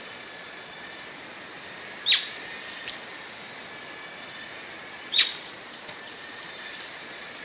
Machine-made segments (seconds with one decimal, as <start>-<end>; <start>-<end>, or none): 0.0-0.9; 4.8-5.3; 7.0-7.4

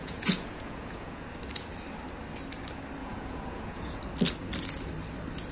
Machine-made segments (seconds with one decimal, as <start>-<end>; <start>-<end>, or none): 0.0-1.3; 3.0-4.0

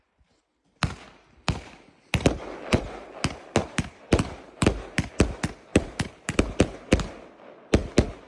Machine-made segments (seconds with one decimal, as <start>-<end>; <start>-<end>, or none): 3.6-5.1; 5.7-6.4

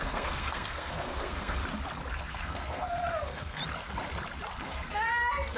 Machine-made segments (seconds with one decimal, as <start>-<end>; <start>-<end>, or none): 0.0-1.6; 2.1-3.6; 4.6-5.6